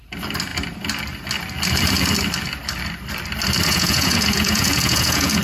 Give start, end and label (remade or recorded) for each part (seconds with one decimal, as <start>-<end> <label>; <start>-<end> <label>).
0.0-3.7 recorded; 3.7-5.4 remade